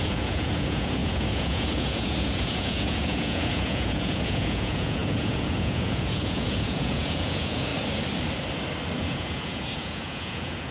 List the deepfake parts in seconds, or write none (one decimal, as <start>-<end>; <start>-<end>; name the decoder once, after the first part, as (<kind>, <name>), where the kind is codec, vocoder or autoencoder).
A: 0.0-7.7 (vocoder, Vocos); 9.0-10.7